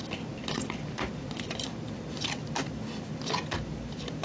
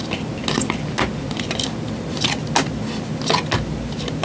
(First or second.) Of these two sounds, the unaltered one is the second